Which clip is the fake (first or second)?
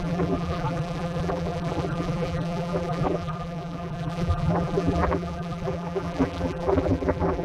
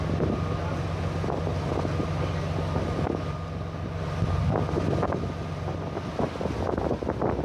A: first